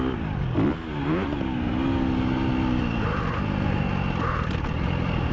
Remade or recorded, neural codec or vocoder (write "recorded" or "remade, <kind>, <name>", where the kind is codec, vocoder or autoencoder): recorded